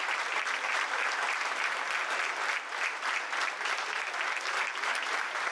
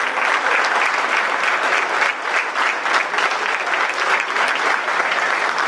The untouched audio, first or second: second